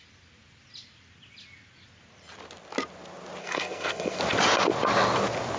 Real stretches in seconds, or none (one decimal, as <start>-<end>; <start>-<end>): 0.0-3.4; 4.2-5.6